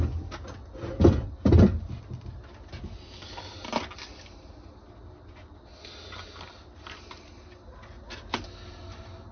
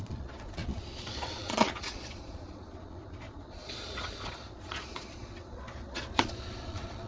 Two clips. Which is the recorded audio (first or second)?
first